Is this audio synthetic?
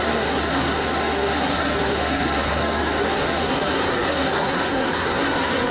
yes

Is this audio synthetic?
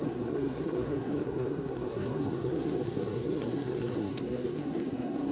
yes